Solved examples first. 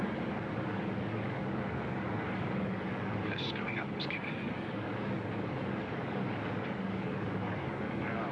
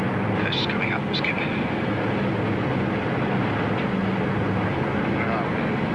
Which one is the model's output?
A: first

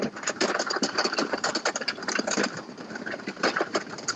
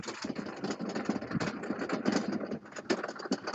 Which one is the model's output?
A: first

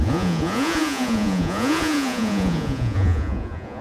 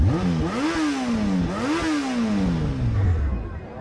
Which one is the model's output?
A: first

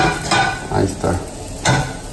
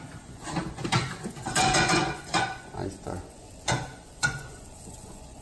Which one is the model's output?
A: second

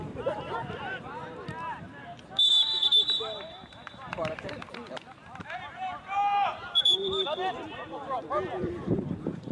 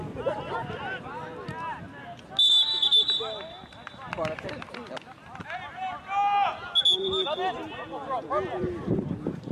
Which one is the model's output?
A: first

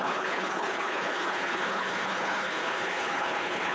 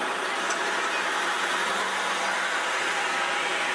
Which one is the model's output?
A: first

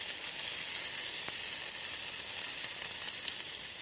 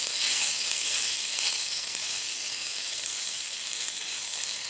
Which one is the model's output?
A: second